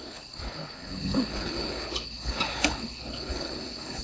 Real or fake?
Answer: fake